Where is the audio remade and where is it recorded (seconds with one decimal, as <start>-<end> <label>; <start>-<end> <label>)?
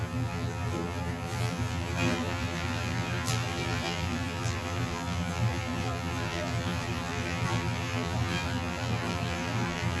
0.0-10.0 remade